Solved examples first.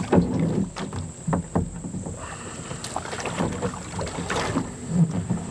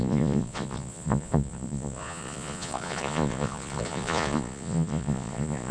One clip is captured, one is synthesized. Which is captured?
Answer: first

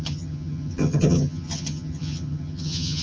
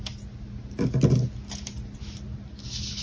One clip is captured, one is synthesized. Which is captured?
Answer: second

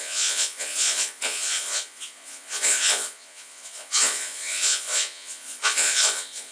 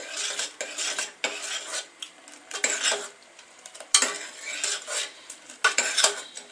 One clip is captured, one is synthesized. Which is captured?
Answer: second